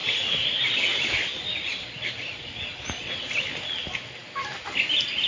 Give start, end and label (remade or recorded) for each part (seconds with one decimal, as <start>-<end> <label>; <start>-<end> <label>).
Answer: 0.0-5.3 recorded